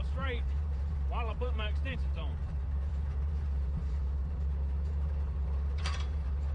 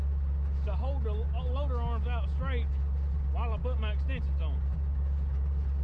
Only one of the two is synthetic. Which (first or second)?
first